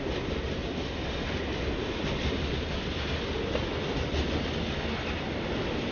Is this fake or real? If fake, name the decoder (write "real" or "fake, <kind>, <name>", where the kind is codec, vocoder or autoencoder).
real